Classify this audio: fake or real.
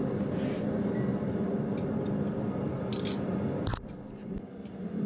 real